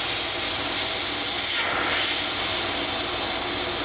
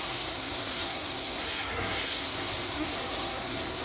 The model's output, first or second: second